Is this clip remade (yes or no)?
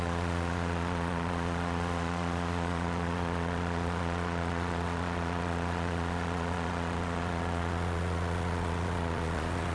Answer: yes